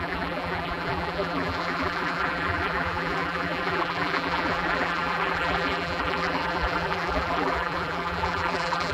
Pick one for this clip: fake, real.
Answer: fake